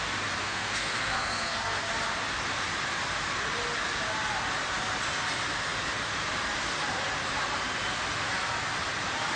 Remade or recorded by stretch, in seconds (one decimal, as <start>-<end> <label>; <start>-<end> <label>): 0.0-0.4 recorded; 0.4-1.9 remade; 1.9-9.4 recorded